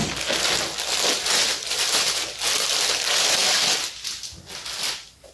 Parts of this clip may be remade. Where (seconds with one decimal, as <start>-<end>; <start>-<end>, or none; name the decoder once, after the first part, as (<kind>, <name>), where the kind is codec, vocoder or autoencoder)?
none